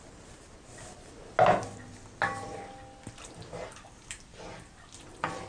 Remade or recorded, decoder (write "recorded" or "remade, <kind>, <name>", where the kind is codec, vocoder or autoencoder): recorded